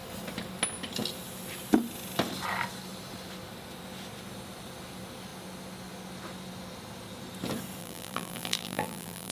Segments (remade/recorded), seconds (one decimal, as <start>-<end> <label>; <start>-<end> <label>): 0.0-7.8 recorded; 7.8-9.3 remade